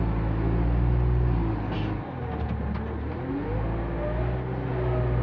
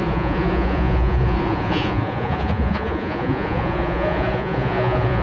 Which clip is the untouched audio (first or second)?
first